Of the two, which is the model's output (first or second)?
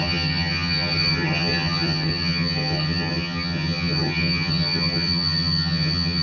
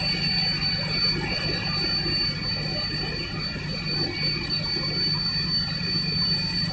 first